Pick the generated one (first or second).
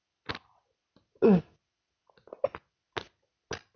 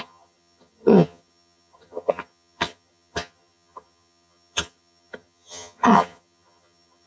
second